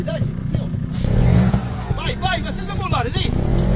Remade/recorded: remade